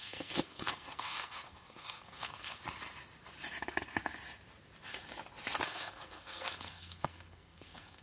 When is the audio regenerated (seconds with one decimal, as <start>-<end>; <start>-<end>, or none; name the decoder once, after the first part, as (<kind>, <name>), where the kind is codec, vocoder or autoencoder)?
0.0-2.6 (codec, SNAC); 5.6-8.0